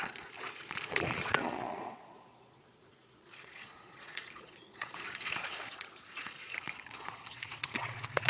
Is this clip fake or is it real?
fake